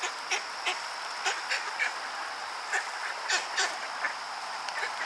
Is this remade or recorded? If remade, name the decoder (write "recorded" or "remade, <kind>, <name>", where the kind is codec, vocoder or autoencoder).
recorded